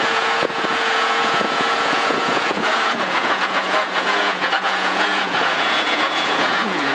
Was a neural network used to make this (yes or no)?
yes